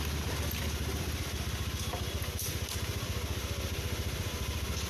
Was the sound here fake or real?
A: fake